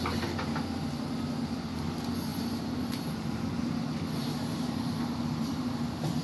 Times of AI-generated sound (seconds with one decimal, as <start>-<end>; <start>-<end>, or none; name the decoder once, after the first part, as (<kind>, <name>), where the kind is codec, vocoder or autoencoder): 2.3-3.8 (vocoder, BigVGAN v2); 4.5-6.2